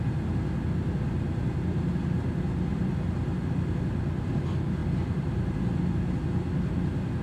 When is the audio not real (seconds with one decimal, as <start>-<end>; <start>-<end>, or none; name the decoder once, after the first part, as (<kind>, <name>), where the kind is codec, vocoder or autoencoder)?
2.7-4.3 (vocoder, BigVGAN v2); 4.8-5.6